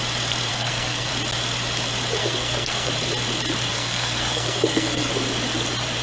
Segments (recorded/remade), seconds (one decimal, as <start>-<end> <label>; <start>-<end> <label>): 0.0-0.5 recorded; 0.5-1.1 remade; 1.1-2.2 recorded; 2.2-2.9 remade; 2.9-3.7 recorded; 3.7-5.1 remade; 5.1-6.0 recorded